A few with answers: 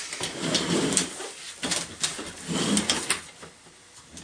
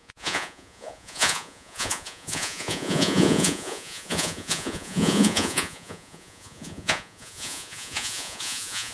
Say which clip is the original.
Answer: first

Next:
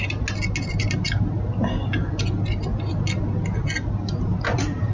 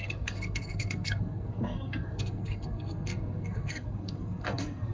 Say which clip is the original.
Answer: first